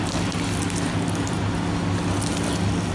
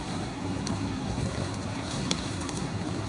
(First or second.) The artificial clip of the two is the second